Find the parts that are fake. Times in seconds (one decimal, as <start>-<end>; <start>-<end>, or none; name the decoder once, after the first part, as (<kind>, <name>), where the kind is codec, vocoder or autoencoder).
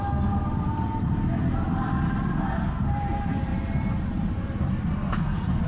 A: 3.5-4.3 (vocoder, BigVGAN v2)